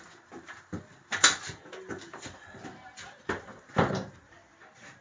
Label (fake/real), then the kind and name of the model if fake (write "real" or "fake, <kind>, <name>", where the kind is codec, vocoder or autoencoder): fake, vocoder, BigVGAN v2